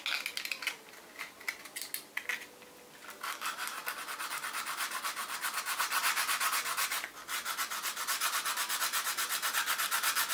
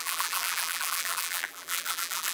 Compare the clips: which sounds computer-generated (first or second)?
second